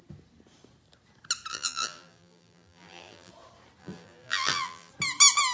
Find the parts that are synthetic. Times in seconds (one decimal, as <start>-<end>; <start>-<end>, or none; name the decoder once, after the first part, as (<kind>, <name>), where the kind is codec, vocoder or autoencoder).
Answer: 1.5-3.3 (vocoder, BigVGAN v2); 3.8-4.9